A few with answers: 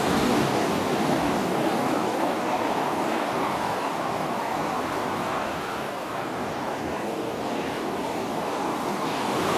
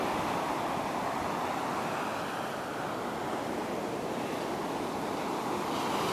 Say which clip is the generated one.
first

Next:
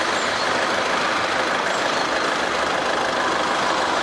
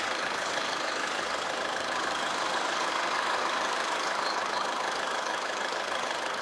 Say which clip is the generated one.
second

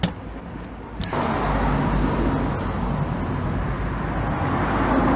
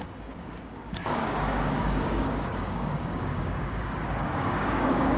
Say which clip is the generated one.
second